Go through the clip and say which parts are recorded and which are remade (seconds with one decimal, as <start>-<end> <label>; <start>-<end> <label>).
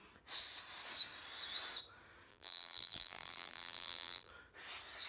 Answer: 0.0-2.3 recorded; 2.3-4.3 remade; 4.3-5.1 recorded